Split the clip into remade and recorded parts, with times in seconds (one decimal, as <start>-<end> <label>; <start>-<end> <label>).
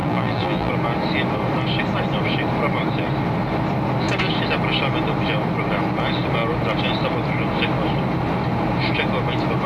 0.0-0.7 remade; 0.7-9.7 recorded